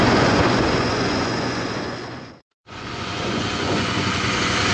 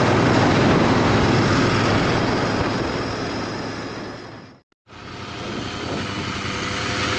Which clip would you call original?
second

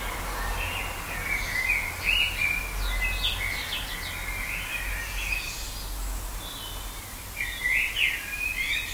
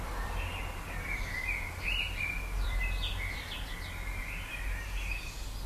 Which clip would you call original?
first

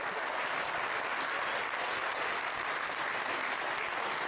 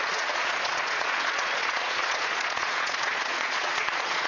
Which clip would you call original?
first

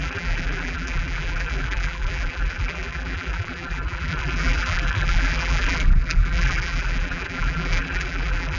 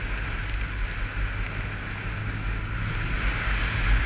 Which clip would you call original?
second